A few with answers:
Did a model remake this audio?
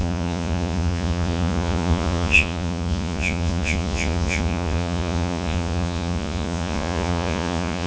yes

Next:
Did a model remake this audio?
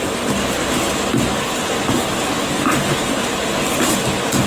no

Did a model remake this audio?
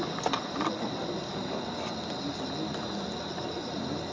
no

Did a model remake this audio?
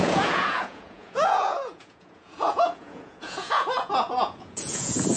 yes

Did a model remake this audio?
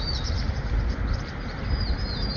no